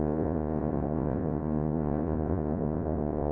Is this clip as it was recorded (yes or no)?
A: no